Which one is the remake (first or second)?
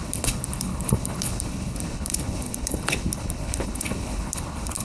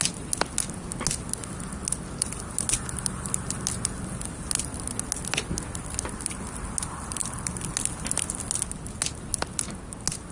first